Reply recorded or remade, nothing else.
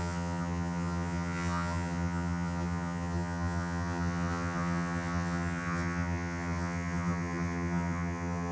remade